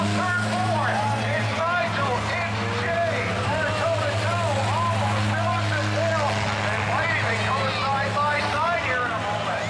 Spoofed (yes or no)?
no